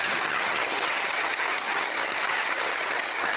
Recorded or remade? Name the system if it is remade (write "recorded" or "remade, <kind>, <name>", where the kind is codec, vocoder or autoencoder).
remade, vocoder, HiFi-GAN